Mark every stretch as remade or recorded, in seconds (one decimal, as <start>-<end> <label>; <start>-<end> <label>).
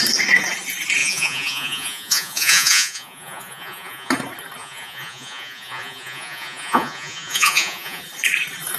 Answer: 0.0-1.0 recorded; 1.0-4.1 remade; 4.1-4.6 recorded; 4.6-8.0 remade; 8.0-8.8 recorded